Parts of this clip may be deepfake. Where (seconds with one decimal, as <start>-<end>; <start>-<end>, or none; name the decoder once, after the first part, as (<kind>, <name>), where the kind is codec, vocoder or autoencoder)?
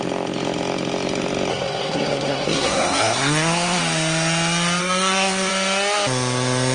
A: 1.5-3.8 (codec, SNAC); 4.8-5.5